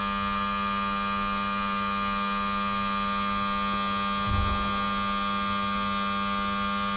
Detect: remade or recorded recorded